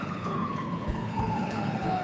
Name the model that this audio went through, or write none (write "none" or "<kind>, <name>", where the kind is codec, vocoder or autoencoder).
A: codec, HILCodec